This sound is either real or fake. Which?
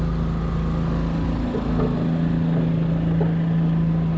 real